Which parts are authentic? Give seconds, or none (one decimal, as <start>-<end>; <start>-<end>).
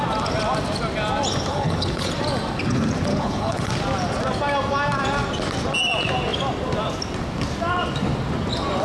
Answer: 0.0-1.5; 2.1-3.1; 3.7-8.8